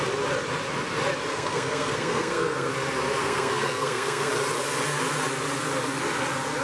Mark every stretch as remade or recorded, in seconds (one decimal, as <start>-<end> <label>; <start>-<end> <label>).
0.0-1.3 recorded; 1.3-2.7 remade; 2.7-3.2 recorded; 3.2-4.3 remade; 4.3-6.6 recorded